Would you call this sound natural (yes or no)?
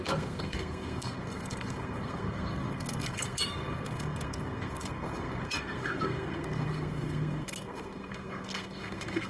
no